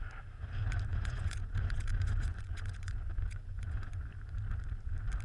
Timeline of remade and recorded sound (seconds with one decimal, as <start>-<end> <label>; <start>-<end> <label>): 0.0-0.9 recorded; 0.9-4.0 remade; 4.0-5.2 recorded